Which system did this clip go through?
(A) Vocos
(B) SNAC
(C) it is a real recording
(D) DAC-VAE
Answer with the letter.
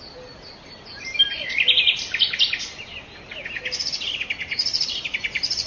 C